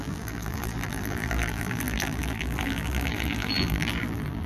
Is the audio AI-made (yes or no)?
yes